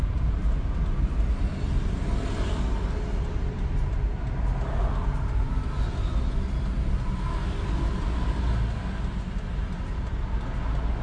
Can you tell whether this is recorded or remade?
recorded